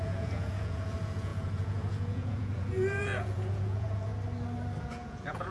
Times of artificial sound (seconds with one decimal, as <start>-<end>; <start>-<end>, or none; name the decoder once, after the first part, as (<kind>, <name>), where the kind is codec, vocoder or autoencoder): 0.0-4.1 (vocoder, Vocos); 4.8-5.5